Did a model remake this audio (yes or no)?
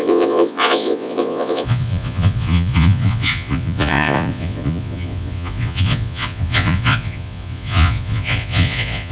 yes